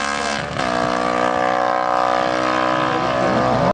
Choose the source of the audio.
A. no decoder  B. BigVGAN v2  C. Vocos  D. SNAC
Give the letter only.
A